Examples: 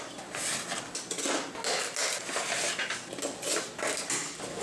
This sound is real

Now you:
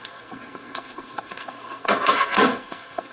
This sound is fake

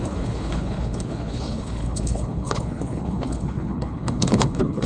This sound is fake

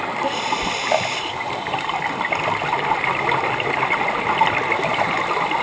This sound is real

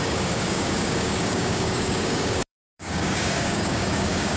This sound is fake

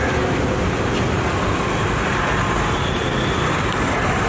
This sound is real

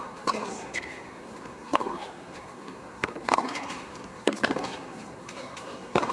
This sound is fake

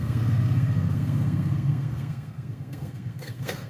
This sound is fake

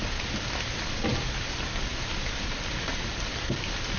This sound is real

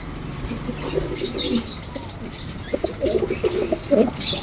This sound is real